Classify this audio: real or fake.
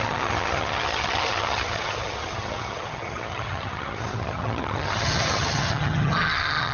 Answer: fake